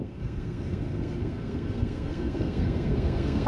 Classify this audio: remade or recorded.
remade